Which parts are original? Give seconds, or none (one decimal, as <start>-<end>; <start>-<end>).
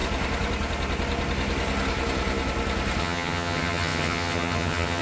0.0-3.0